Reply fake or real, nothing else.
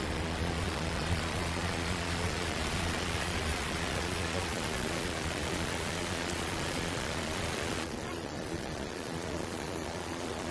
fake